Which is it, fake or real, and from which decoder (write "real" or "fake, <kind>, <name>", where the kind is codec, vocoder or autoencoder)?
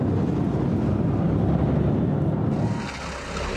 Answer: real